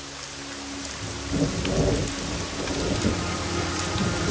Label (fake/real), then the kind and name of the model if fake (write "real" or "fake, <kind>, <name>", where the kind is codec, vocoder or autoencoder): real